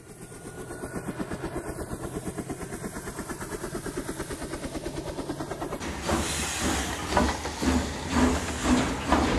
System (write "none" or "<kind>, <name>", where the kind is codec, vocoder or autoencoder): none